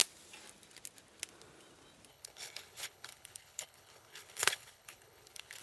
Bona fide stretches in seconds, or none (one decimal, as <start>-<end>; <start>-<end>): 0.0-2.1